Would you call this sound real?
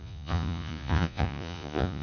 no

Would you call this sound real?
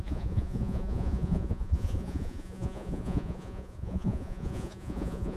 no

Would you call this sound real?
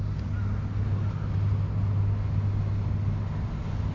yes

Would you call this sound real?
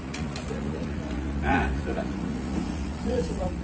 no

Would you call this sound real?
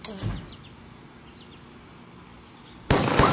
yes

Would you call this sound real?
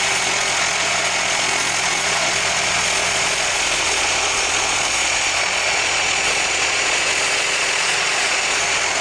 no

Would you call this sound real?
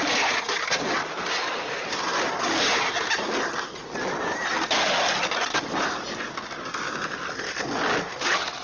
yes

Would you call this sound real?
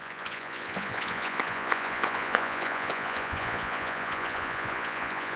no